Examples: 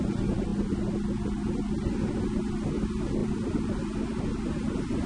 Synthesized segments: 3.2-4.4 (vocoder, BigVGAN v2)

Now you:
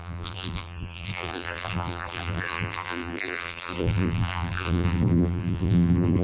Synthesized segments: 0.0-6.2 (vocoder, BigVGAN v2)

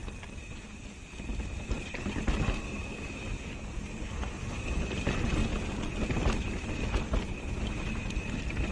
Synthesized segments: 8.0-8.7 (vocoder, BigVGAN v2)